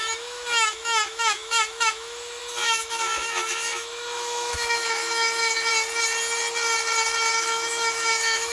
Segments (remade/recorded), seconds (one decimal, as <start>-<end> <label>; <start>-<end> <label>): 0.0-5.7 remade; 5.7-7.3 recorded; 7.3-8.5 remade